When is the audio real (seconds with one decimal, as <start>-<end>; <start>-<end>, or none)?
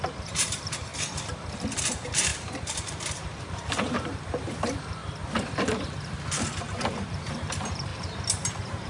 0.9-1.9; 5.0-7.1; 7.9-8.5